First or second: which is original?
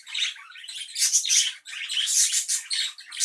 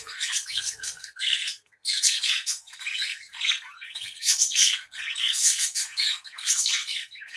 first